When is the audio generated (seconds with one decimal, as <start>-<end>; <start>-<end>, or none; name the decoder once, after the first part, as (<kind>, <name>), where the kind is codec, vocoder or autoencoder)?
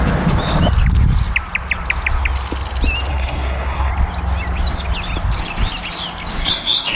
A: 3.1-3.9 (codec, SNAC); 6.4-7.0